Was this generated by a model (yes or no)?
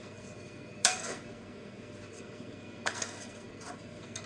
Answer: yes